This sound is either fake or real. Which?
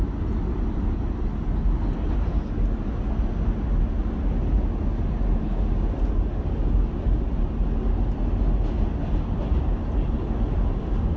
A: real